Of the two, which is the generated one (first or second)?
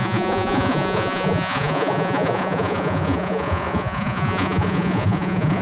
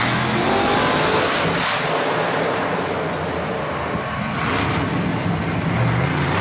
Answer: first